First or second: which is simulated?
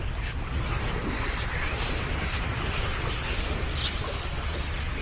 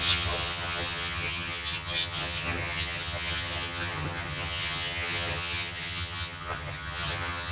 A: second